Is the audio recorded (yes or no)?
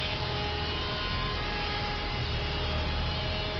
yes